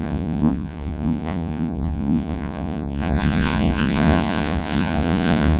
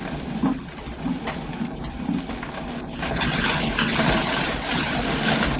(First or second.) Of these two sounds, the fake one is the first